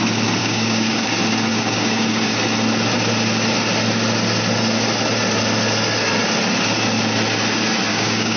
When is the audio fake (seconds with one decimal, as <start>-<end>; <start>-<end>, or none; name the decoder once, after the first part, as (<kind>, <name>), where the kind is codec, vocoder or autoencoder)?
0.4-1.0 (codec, DAC); 1.5-2.3; 7.9-8.4